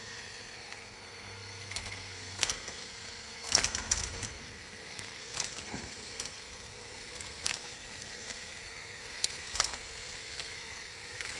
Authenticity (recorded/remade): remade